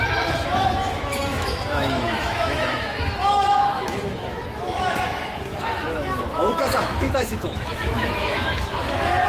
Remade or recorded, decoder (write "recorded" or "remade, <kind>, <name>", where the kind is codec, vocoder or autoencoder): remade, autoencoder, DAC-VAE